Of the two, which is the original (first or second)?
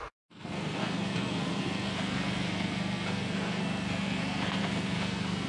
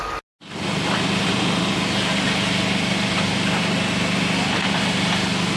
second